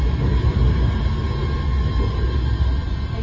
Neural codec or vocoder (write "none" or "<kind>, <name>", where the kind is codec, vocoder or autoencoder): none